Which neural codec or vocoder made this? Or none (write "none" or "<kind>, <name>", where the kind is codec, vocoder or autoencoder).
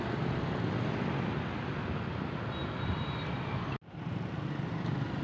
none